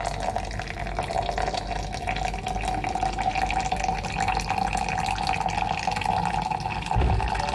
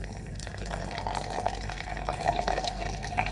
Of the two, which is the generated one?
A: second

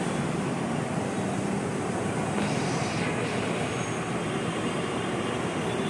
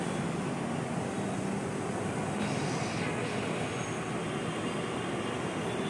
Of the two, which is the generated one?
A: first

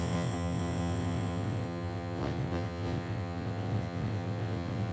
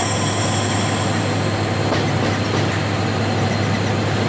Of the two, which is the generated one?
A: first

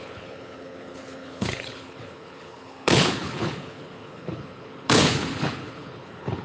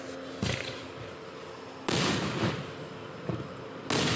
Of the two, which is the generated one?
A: first